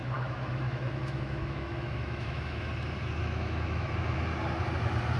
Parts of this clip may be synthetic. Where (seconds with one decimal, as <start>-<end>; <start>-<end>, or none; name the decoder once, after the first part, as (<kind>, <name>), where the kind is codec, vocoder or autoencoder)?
0.0-2.7 (autoencoder, DAC-VAE); 3.2-4.2

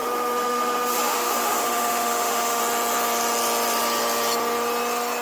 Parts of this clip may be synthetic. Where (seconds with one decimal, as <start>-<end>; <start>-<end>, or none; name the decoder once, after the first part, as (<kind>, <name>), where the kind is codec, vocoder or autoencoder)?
0.0-2.6 (autoencoder, DAC-VAE)

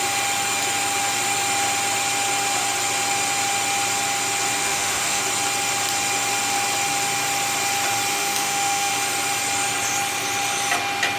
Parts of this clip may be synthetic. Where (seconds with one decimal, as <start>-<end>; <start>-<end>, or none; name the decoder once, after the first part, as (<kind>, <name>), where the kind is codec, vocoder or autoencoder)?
4.6-5.2 (autoencoder, DAC-VAE); 8.1-8.9

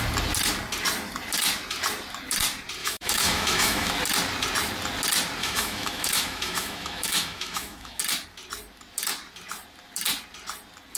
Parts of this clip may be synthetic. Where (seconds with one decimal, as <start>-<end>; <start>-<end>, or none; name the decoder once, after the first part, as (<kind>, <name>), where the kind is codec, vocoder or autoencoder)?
2.8-3.9 (autoencoder, DAC-VAE); 5.4-8.0

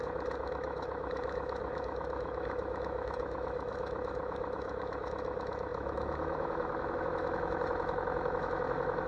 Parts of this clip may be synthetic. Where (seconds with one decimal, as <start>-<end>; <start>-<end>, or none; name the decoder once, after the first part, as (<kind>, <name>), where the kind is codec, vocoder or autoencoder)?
0.0-9.1 (autoencoder, DAC-VAE)

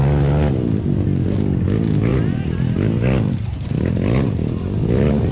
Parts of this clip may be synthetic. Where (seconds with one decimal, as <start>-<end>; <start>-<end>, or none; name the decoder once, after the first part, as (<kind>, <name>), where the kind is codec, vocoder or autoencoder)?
none

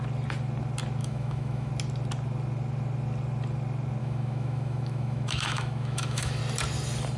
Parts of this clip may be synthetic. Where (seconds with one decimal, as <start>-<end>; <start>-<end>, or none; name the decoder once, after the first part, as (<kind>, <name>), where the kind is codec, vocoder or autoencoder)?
1.0-1.7 (autoencoder, DAC-VAE); 4.0-6.4